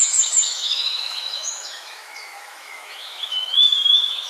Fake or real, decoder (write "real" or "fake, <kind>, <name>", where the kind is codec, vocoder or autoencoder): fake, autoencoder, DAC-VAE